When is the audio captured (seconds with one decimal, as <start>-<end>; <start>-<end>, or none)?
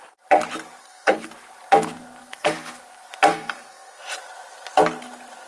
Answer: 0.0-0.8; 1.3-2.2; 2.8-3.3; 4.0-5.5